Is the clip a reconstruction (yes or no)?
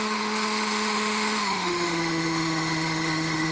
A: yes